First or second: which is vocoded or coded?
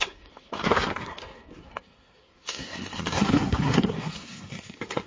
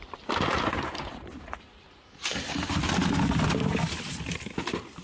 first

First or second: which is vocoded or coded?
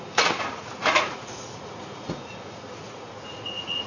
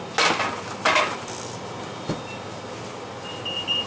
first